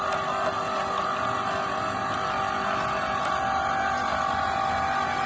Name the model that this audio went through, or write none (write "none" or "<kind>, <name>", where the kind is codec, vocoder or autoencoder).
none